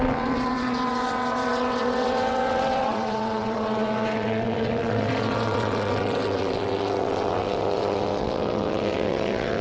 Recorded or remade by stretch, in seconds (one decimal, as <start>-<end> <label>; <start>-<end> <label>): 0.0-9.6 remade